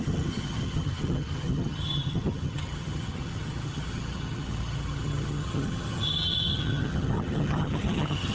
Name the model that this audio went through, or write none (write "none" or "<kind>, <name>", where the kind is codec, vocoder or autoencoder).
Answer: vocoder, HiFi-GAN